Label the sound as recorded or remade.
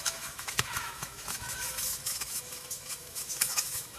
remade